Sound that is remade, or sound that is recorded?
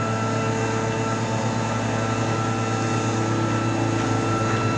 recorded